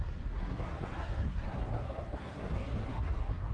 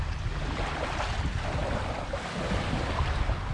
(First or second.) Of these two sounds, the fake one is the first